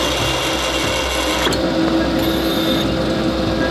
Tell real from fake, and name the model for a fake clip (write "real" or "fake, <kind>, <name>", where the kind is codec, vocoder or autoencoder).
real